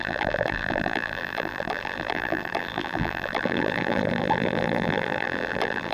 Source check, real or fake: fake